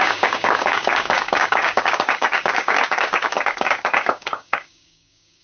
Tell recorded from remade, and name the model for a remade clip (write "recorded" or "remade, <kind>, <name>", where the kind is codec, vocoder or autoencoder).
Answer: remade, codec, DAC